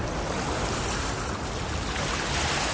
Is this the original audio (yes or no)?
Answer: yes